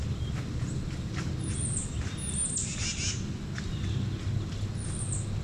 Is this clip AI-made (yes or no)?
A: no